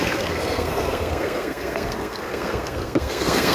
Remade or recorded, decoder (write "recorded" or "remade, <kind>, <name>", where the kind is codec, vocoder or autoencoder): remade, codec, SNAC